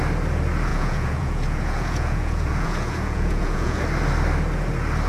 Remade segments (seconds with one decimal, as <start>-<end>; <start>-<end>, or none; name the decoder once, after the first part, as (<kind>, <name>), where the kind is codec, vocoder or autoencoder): 0.7-3.8 (vocoder, Vocos)